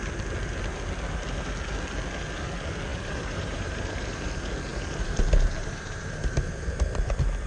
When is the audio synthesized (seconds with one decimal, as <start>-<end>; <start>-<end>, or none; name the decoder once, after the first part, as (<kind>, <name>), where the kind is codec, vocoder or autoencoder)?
2.9-4.3 (vocoder, BigVGAN v2); 4.7-7.1